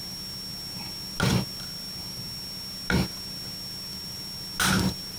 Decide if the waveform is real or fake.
real